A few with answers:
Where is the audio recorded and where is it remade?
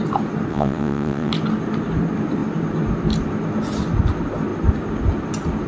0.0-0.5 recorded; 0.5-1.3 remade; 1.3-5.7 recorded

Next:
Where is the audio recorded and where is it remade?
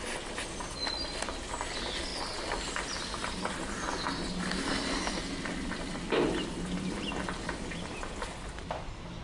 0.0-9.2 recorded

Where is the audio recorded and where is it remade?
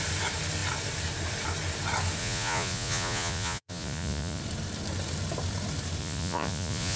0.0-2.2 recorded; 2.2-4.4 remade; 4.4-6.0 recorded; 6.0-7.0 remade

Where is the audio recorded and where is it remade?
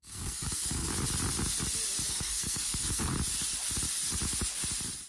0.0-0.9 remade; 0.9-2.1 recorded; 2.1-3.1 remade; 3.1-5.1 recorded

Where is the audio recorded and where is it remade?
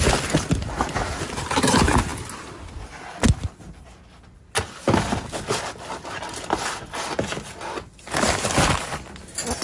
0.0-9.6 recorded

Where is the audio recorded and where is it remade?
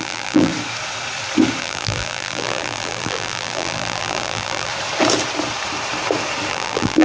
0.0-0.5 remade; 0.5-1.6 recorded; 1.6-4.7 remade; 4.7-6.5 recorded; 6.5-7.0 remade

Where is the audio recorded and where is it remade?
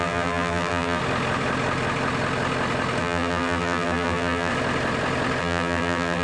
0.0-1.0 remade; 1.0-3.0 recorded; 3.0-4.5 remade; 4.5-5.4 recorded; 5.4-6.2 remade